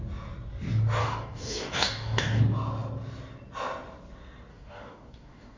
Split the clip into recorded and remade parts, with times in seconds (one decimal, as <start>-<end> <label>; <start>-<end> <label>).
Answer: 0.0-1.0 recorded; 1.0-2.4 remade; 2.4-4.5 recorded; 4.5-5.6 remade